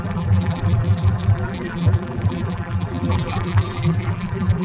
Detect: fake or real fake